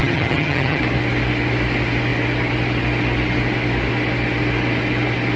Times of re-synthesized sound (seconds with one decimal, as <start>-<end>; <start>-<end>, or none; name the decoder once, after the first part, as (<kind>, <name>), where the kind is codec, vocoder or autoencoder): 0.0-0.8 (vocoder, HiFi-GAN)